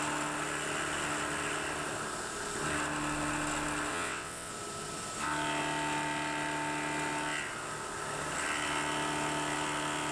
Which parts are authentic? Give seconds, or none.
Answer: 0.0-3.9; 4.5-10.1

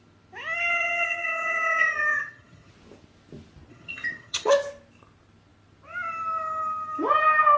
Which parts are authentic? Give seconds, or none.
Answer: 0.0-0.7; 2.7-3.7; 4.5-7.6

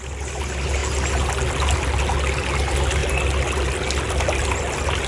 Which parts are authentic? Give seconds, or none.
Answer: 0.0-5.1